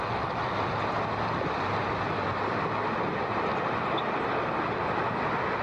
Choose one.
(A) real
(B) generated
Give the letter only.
A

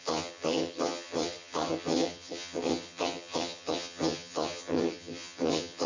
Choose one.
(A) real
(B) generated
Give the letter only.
B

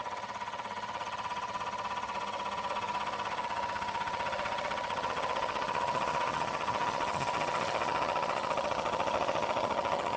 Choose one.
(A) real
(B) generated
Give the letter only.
B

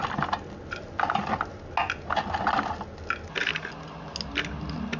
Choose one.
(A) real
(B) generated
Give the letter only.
A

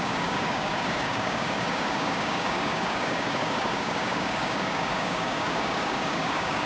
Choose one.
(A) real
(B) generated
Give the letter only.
B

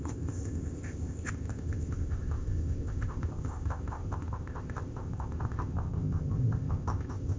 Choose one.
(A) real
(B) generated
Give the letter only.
B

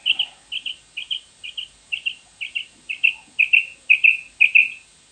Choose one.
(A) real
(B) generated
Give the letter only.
A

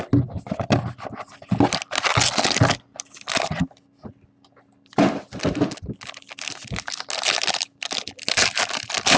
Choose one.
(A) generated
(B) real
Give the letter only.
B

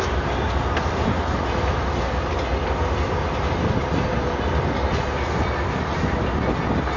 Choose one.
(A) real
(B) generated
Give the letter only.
A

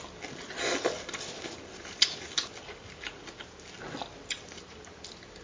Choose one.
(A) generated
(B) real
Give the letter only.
B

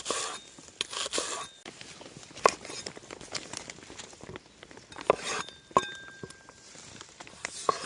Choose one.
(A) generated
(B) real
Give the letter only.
B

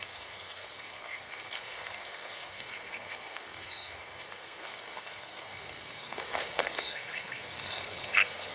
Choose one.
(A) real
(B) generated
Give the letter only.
B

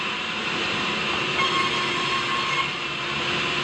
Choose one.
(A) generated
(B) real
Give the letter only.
B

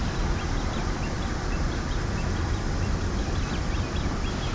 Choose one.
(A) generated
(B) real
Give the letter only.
B